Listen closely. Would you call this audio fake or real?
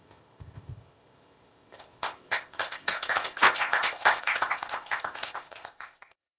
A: fake